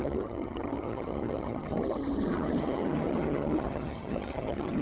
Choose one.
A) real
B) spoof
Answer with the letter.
B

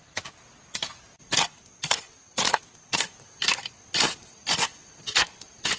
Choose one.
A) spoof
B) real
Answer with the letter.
B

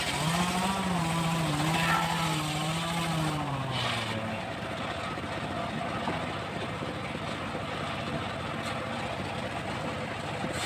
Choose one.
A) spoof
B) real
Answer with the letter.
B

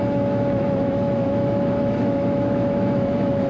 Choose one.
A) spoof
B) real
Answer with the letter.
A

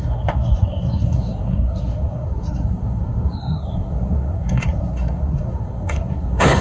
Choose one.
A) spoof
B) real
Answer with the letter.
A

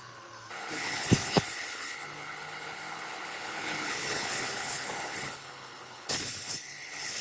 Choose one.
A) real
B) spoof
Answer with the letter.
B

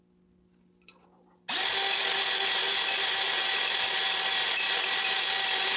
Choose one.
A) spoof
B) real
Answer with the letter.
B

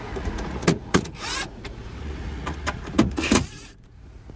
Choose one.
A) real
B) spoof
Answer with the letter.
B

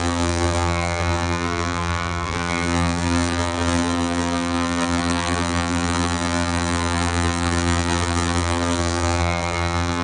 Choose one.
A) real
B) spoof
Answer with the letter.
B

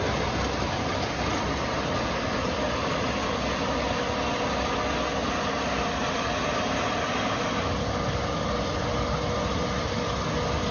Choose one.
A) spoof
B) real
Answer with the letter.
B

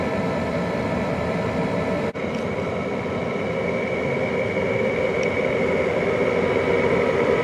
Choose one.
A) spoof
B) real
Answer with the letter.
B